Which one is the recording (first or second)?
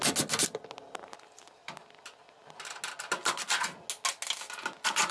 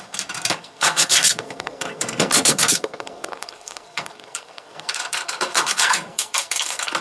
first